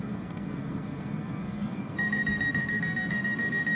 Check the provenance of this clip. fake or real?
fake